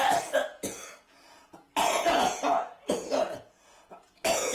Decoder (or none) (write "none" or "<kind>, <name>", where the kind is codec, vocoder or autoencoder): vocoder, Vocos